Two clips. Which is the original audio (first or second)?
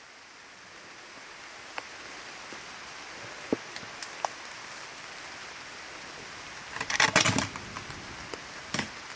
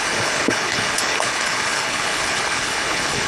first